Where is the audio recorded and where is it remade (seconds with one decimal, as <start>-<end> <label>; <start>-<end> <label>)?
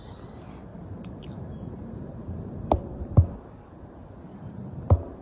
0.0-0.7 recorded; 0.7-3.8 remade; 3.8-4.3 recorded; 4.3-5.2 remade